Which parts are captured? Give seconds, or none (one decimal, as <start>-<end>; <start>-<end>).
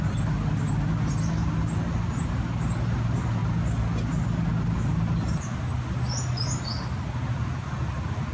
0.0-8.3